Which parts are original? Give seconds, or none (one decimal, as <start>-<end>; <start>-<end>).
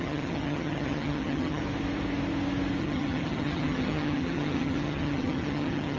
1.6-2.8